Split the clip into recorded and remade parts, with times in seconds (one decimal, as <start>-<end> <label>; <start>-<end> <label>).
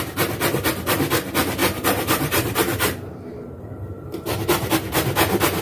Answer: 0.0-1.6 recorded; 1.6-4.7 remade; 4.7-5.6 recorded